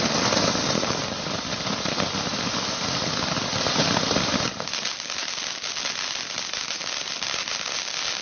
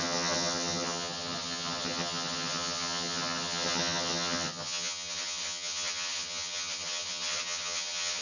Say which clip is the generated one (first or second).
second